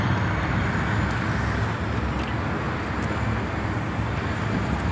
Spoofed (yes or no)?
no